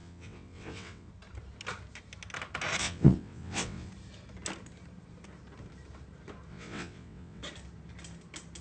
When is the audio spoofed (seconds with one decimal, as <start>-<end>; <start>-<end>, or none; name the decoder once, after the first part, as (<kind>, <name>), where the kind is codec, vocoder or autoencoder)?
0.0-1.1 (vocoder, WaveNeXt); 2.8-3.9; 6.5-7.4